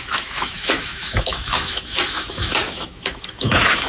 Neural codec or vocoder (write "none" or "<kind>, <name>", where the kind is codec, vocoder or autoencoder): autoencoder, DAC-VAE